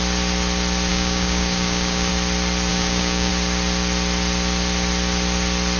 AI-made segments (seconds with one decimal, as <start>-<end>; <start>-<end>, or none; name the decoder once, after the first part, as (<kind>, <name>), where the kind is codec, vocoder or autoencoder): 0.9-2.1 (codec, DAC); 2.7-3.3